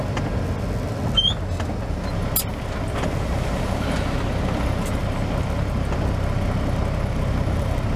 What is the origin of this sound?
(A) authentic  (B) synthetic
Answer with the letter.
A